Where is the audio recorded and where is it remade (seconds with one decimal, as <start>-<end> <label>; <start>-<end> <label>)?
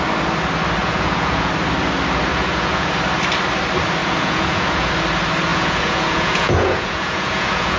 0.0-0.8 recorded; 0.8-1.5 remade; 1.5-2.3 recorded; 2.3-2.9 remade; 2.9-4.0 recorded; 4.0-4.9 remade; 4.9-5.5 recorded; 5.5-7.8 remade